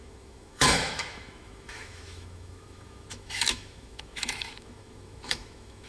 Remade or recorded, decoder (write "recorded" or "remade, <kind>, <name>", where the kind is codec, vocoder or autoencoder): remade, autoencoder, DAC-VAE